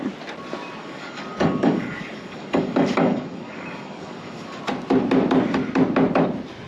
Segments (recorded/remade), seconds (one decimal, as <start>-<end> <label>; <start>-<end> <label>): 0.0-0.8 recorded; 0.8-4.6 remade; 4.6-6.7 recorded